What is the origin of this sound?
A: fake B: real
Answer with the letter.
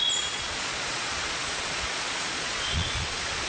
A